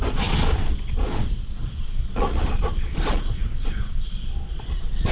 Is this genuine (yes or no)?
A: no